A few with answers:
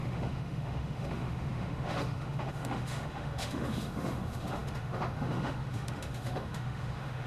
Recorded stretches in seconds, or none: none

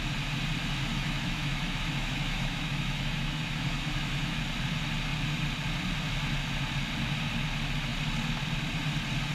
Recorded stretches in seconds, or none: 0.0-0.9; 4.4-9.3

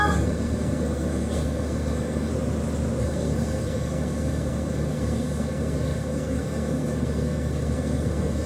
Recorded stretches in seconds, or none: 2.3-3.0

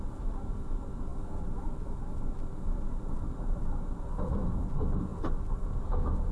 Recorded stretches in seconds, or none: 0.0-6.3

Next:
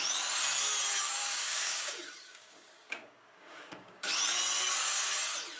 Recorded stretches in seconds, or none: 0.0-1.2; 4.1-5.6